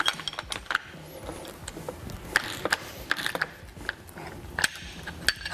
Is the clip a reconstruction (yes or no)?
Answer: no